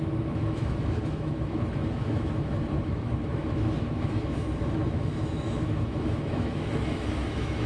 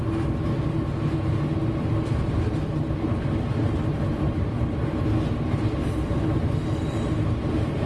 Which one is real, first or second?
second